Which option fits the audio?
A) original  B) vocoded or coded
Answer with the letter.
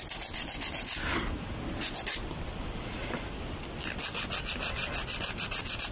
A